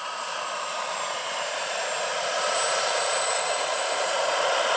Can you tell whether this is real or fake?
fake